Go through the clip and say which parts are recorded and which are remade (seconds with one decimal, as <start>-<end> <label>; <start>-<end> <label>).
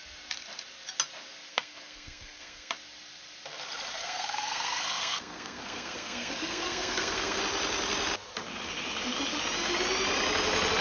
0.0-1.5 recorded; 1.5-2.7 remade; 2.7-4.0 recorded; 4.0-7.4 remade; 7.4-10.8 recorded